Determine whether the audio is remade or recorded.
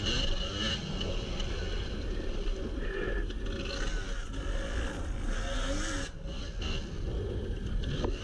recorded